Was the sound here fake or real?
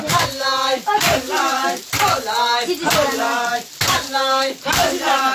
real